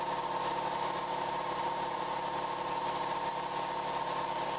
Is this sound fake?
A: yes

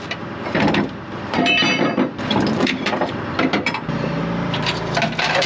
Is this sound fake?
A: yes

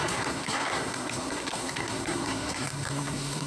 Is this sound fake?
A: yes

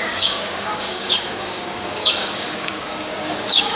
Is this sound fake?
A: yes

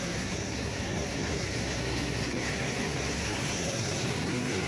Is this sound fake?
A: yes